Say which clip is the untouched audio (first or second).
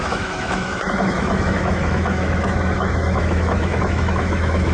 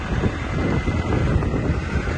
second